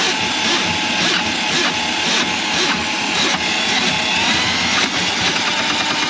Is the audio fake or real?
real